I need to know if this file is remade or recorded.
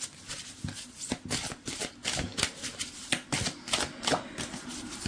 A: recorded